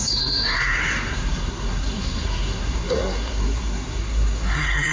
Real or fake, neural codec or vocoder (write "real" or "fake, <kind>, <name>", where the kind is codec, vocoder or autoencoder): fake, codec, SNAC